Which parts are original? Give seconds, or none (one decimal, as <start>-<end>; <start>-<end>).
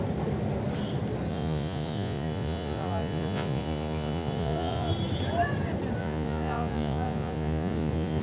0.0-1.3; 4.9-6.0